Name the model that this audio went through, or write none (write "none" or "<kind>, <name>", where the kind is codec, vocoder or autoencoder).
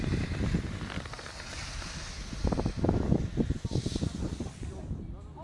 none